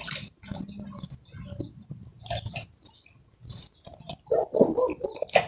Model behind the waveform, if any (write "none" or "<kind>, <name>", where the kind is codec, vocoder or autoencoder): none